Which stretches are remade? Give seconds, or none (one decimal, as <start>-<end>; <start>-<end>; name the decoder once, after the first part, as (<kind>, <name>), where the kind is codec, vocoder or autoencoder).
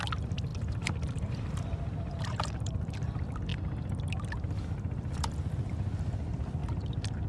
0.0-3.5 (vocoder, BigVGAN v2); 4.0-6.6